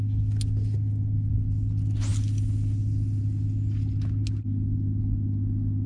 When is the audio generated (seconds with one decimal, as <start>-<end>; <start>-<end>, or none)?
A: none